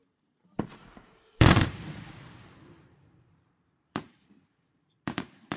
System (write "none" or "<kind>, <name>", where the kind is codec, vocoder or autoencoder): vocoder, BigVGAN v2